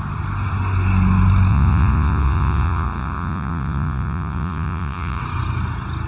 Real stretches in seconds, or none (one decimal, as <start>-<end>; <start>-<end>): 0.0-1.5; 5.2-6.1